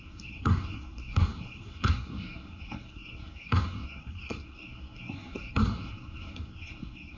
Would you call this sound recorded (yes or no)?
no